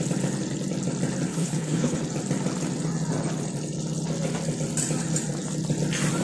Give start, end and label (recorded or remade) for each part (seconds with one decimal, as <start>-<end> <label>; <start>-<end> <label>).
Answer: 0.0-1.3 recorded; 1.3-2.0 remade; 2.0-6.2 recorded